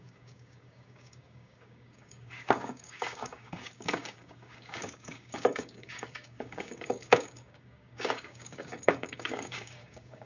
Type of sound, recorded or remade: remade